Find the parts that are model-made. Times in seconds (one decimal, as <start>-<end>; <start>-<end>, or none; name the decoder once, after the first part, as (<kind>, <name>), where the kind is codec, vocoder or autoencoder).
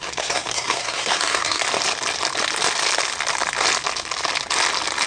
0.0-1.6 (codec, SNAC)